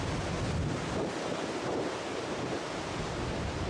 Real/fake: real